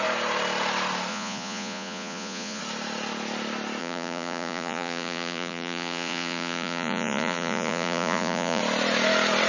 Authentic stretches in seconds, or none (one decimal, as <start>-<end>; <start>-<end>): 0.0-1.1; 2.6-3.8; 8.6-9.5